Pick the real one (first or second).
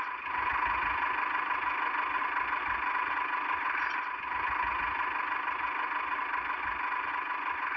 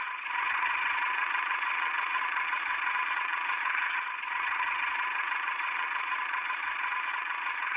first